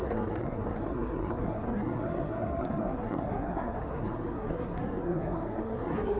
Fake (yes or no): yes